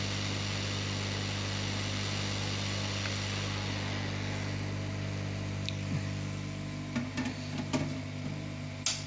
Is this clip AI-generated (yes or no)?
no